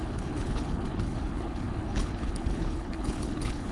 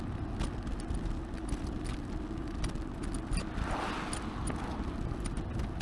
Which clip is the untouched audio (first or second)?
second